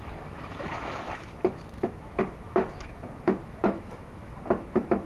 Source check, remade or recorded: remade